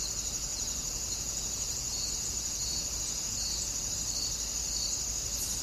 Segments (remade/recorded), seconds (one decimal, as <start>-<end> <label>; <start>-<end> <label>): 0.0-0.5 recorded; 0.5-3.9 remade; 3.9-5.6 recorded